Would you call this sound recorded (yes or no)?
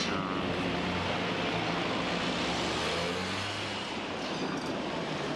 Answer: yes